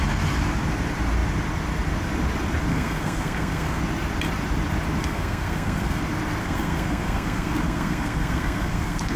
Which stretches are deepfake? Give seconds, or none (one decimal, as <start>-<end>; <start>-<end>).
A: 2.7-3.8; 5.0-6.0; 6.4-9.2